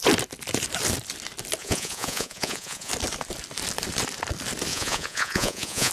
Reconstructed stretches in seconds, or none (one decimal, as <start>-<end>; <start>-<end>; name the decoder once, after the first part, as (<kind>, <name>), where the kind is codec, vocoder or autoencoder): 1.6-2.9 (vocoder, Vocos); 4.7-5.9